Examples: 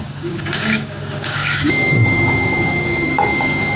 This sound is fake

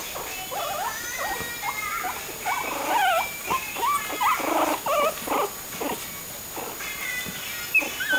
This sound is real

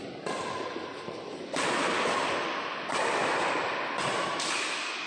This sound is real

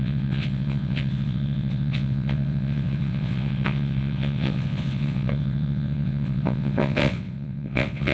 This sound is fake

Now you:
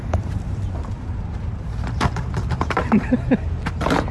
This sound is fake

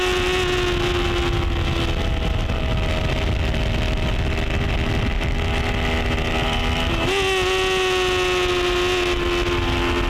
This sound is real